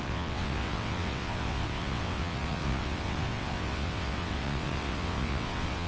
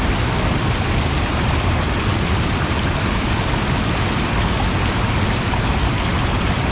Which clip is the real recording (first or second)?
second